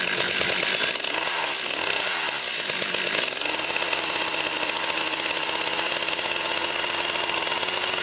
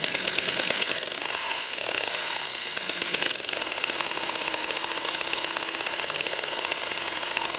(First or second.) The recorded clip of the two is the first